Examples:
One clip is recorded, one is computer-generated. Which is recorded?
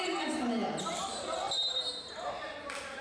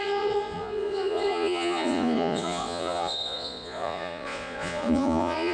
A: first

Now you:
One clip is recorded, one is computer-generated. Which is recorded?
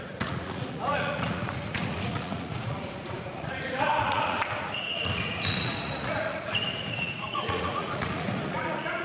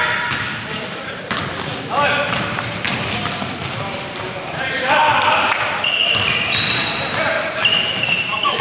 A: second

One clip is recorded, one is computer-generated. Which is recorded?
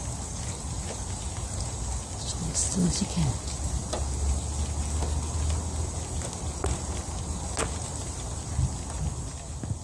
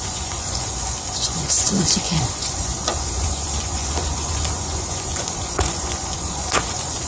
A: first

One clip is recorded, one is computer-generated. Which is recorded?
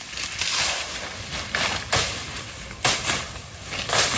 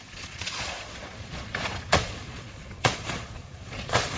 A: first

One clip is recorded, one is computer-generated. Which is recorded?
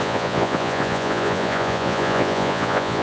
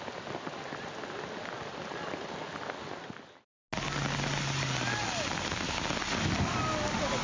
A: second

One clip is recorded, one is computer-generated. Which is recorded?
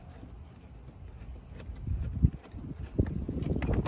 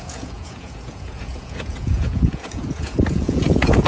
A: first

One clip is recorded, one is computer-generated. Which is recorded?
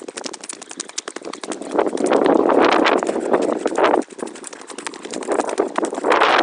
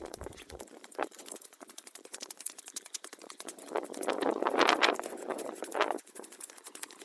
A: first